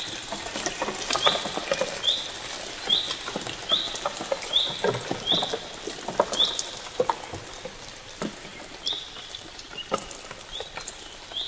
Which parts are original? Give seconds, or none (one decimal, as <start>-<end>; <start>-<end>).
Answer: 1.6-2.5